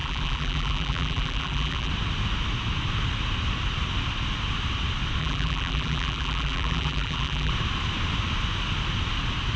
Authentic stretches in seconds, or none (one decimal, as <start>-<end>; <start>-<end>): 1.9-5.2; 7.5-9.6